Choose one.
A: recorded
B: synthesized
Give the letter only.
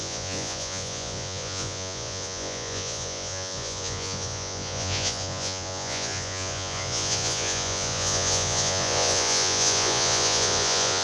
B